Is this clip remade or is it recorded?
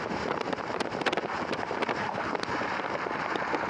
remade